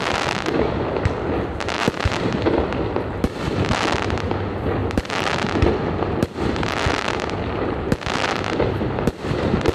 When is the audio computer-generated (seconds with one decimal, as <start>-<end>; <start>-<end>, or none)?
none